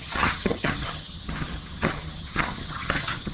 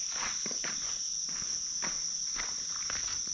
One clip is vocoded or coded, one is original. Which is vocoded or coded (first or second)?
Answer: first